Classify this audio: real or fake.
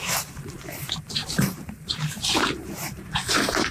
fake